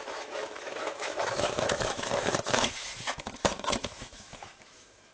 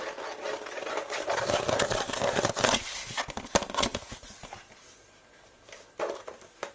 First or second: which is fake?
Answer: first